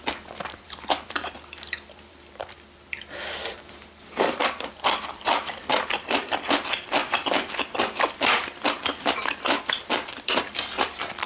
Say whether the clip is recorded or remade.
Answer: remade